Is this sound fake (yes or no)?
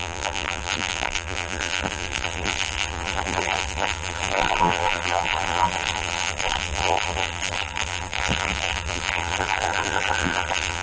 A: yes